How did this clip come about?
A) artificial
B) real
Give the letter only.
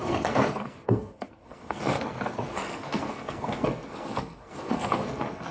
A